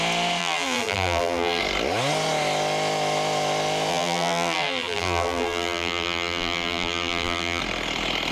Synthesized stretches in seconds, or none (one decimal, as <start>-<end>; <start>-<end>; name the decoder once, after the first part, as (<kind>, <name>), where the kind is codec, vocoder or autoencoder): 0.4-1.6 (vocoder, BigVGAN v2); 3.9-7.6